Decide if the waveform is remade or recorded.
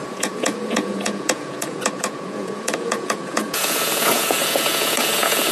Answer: remade